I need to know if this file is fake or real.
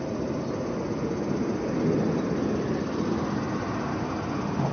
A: real